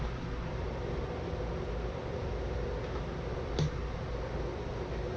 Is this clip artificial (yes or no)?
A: no